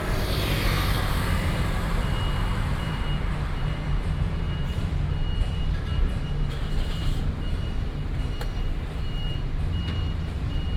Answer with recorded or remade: remade